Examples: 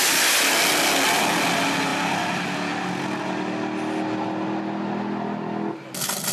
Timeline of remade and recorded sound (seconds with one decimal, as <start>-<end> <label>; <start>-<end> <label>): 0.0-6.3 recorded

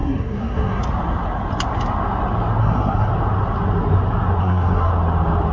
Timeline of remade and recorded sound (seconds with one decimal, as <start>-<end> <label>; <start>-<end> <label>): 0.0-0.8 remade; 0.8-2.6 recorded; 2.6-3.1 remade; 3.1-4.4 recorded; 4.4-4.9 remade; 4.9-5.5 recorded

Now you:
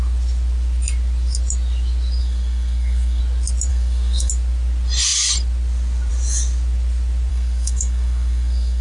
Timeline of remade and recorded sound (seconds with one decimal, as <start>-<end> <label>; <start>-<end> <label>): 0.0-2.2 recorded; 2.2-3.2 remade; 3.2-3.7 recorded; 3.7-4.3 remade; 4.3-7.3 recorded; 7.3-8.8 remade

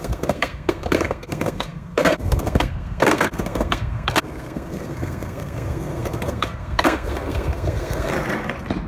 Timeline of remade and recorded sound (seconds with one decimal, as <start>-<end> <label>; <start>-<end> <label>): 0.0-8.1 remade; 8.1-8.9 recorded

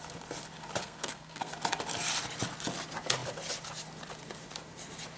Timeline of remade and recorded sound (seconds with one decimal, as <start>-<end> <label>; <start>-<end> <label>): 0.0-0.8 recorded; 0.8-1.5 remade; 1.5-5.2 recorded

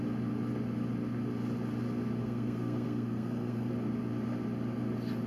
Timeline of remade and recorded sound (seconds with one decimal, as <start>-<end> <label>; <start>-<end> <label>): 0.0-2.2 recorded; 2.2-3.7 remade; 3.7-5.3 recorded

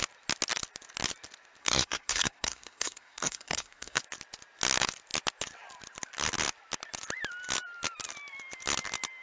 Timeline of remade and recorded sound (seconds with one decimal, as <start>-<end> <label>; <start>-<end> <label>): 0.0-1.6 recorded; 1.6-4.0 remade; 4.0-9.2 recorded